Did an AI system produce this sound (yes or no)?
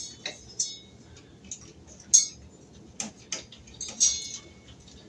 no